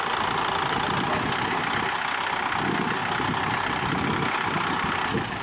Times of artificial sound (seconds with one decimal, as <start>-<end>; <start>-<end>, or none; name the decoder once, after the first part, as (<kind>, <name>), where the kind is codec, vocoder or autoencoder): 3.0-3.5 (vocoder, BigVGAN v2)